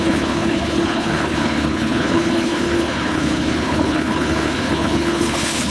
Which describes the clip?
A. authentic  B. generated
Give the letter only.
B